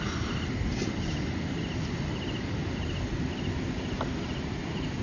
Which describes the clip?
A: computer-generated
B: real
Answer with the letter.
B